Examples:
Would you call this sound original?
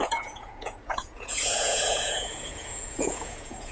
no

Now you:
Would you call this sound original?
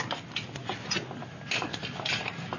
yes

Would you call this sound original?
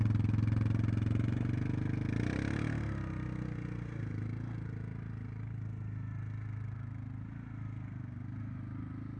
yes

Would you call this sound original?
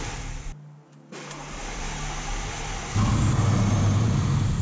yes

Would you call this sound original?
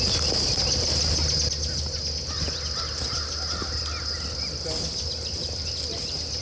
yes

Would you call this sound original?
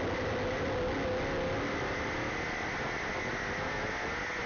yes